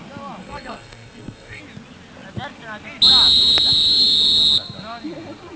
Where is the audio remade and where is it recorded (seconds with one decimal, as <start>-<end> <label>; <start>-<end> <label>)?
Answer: 0.0-0.4 recorded; 0.4-1.6 remade; 1.6-5.6 recorded

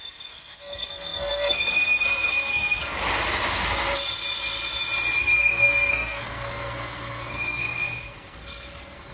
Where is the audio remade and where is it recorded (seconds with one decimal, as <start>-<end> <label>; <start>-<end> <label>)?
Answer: 0.0-2.8 remade; 2.8-5.2 recorded; 5.2-9.1 remade